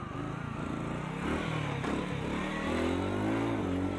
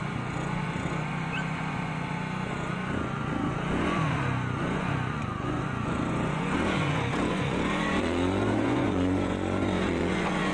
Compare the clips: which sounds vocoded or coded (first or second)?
second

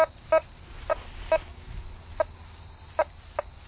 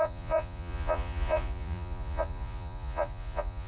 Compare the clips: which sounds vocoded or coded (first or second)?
second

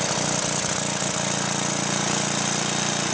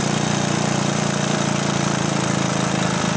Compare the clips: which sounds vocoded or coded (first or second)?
second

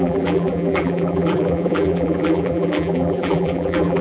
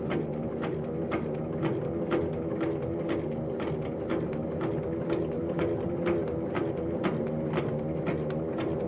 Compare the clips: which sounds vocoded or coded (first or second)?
first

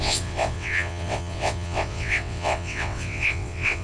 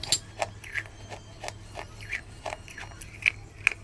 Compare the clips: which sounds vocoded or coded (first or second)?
first